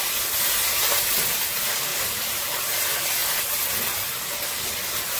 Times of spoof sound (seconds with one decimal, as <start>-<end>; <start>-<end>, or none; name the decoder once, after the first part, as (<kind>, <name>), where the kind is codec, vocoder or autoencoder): 1.9-2.6 (vocoder, BigVGAN v2)